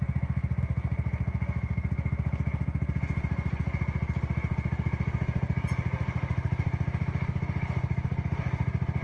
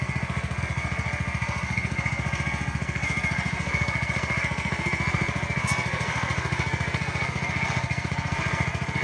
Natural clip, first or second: first